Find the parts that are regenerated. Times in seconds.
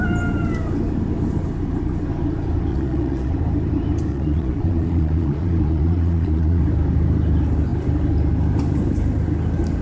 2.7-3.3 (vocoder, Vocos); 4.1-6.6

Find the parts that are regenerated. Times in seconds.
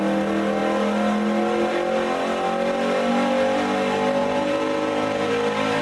4.2-5.3 (vocoder, Vocos)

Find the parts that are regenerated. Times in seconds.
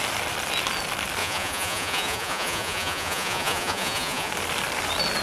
1.2-4.3 (vocoder, Vocos)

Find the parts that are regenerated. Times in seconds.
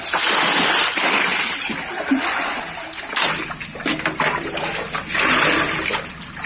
2.1-2.6 (vocoder, Vocos)